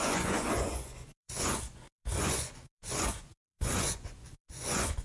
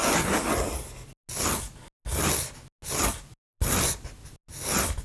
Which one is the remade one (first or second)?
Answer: first